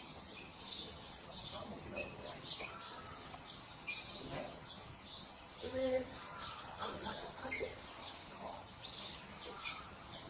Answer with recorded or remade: remade